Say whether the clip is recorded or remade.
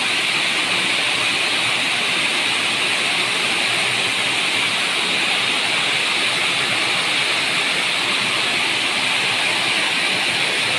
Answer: recorded